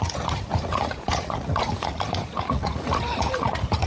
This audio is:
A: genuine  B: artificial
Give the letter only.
B